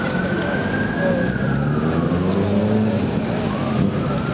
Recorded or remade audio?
recorded